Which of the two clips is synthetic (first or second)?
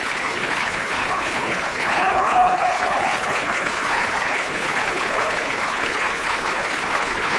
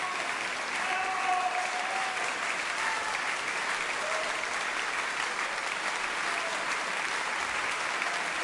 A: first